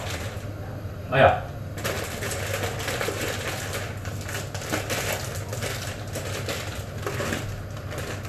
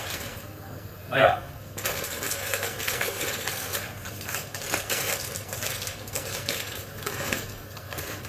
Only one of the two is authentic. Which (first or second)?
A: first